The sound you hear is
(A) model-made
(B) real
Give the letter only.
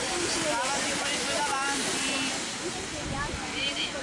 B